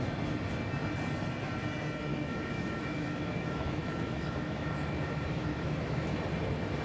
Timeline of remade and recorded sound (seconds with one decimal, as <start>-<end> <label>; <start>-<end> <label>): 0.0-2.1 recorded; 2.1-6.2 remade; 6.2-6.8 recorded